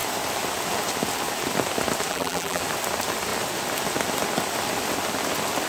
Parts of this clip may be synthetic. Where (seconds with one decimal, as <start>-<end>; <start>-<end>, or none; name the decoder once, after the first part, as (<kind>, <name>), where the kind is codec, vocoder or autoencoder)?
2.1-2.6 (vocoder, BigVGAN v2)